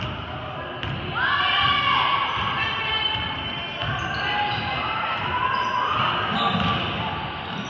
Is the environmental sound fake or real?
real